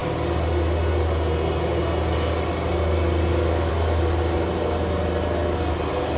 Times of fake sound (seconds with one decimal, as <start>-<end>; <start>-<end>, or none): none